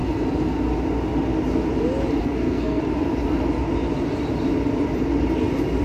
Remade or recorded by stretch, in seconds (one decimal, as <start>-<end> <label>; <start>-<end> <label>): 0.0-2.2 recorded; 2.2-2.8 remade; 2.8-5.8 recorded